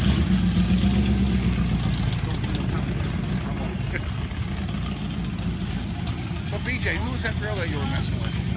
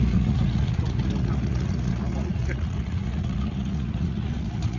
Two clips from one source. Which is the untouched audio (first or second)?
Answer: first